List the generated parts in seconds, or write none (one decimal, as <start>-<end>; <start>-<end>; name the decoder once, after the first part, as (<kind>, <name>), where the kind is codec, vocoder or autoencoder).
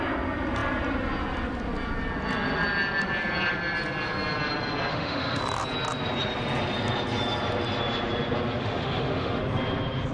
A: 4.9-5.4 (autoencoder, DAC-VAE); 8.6-9.4